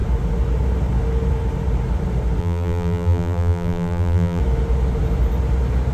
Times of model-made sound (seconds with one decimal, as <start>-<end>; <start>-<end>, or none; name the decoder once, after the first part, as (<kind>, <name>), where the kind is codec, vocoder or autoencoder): 2.4-4.4 (vocoder, BigVGAN v2)